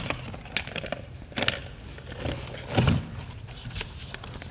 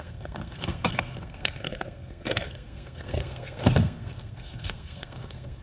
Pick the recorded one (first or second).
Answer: first